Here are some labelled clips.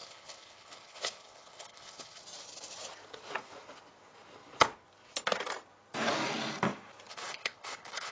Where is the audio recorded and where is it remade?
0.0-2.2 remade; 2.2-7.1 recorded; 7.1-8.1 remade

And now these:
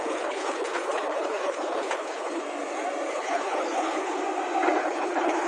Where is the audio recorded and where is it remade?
0.0-2.4 remade; 2.4-3.1 recorded; 3.1-4.2 remade; 4.2-4.8 recorded; 4.8-5.5 remade

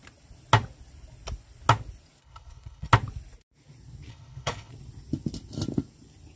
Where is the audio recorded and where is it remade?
0.0-2.2 recorded; 2.2-2.9 remade; 2.9-4.1 recorded; 4.1-4.7 remade; 4.7-6.4 recorded

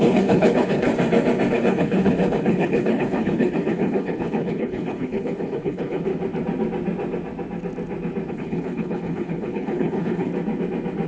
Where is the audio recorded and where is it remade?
0.0-0.9 remade; 0.9-1.5 recorded; 1.5-6.1 remade; 6.1-8.3 recorded; 8.3-10.3 remade; 10.3-11.1 recorded

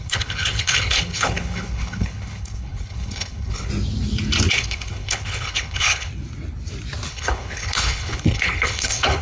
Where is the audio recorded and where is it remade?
0.0-3.7 remade; 3.7-4.5 recorded; 4.5-6.1 remade; 6.1-7.1 recorded; 7.1-9.2 remade